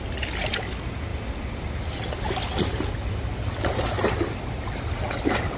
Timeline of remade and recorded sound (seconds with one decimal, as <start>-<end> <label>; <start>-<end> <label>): 0.0-5.6 recorded